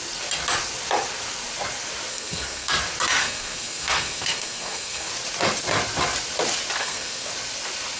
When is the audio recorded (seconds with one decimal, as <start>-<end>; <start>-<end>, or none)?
0.0-2.1; 2.7-3.2; 5.1-6.8; 7.3-8.0